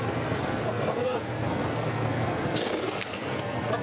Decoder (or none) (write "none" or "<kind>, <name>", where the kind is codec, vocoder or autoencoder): codec, SNAC